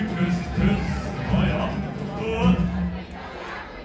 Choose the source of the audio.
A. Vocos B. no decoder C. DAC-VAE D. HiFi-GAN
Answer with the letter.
A